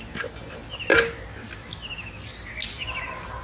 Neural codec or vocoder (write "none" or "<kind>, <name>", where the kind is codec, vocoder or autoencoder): none